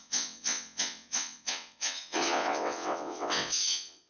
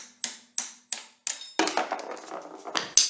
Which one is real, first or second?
second